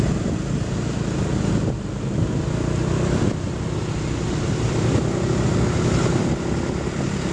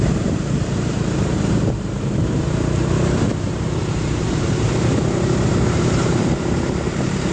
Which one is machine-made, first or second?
second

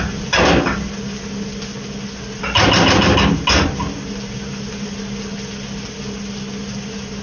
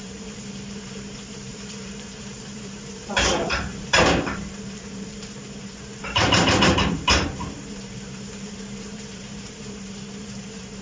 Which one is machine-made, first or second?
second